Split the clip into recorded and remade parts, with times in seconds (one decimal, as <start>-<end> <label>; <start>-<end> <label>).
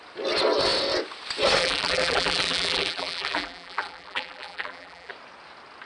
0.0-1.6 recorded; 1.6-5.1 remade; 5.1-5.9 recorded